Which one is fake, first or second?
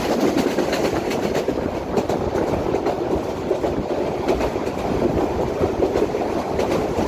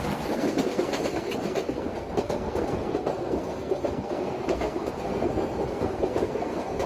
second